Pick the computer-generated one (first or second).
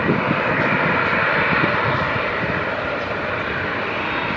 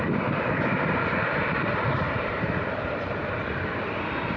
second